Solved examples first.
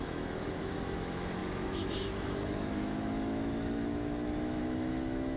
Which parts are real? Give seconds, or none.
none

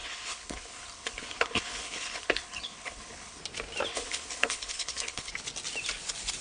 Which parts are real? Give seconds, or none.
3.4-3.9; 5.3-6.4

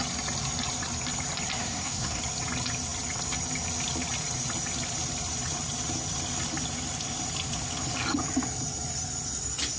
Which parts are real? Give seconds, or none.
0.0-1.6; 2.2-9.8